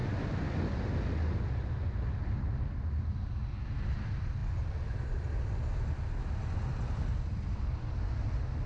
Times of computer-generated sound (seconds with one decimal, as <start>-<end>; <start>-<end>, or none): none

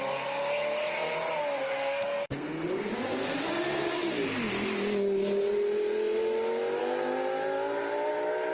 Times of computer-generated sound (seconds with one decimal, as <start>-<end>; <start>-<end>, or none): 1.4-2.9

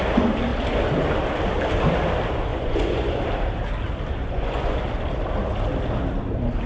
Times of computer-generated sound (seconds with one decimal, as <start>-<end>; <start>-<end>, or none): 2.5-3.2; 4.2-4.8

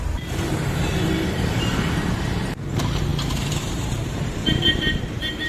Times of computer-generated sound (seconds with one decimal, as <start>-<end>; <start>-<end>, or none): 0.0-5.5

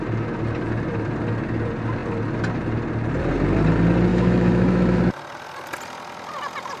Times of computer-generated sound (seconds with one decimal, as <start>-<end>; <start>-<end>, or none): 4.1-5.0

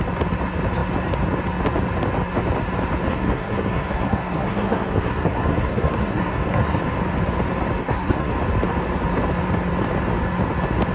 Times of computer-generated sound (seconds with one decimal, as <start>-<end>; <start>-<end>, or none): 3.1-6.8; 7.8-8.3

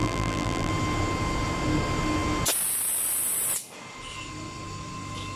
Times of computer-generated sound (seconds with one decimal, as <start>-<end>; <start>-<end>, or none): 0.0-0.7